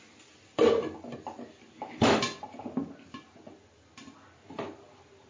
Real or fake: real